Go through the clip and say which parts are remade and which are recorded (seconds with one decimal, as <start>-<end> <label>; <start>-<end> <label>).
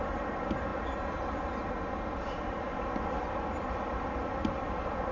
0.0-5.1 recorded